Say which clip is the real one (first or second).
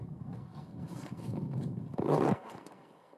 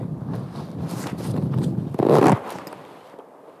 second